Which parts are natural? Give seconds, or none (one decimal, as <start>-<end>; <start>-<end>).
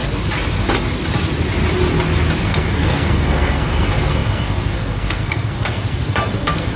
0.0-2.4